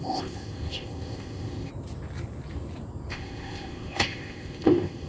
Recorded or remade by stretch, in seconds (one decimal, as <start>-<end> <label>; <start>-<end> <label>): 0.0-1.7 remade; 1.7-3.1 recorded; 3.1-5.1 remade